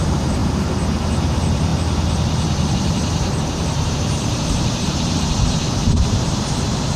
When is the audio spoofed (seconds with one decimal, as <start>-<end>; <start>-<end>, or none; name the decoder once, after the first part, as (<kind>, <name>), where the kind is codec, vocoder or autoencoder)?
0.0-0.4 (vocoder, BigVGAN v2); 1.0-1.7; 2.7-7.0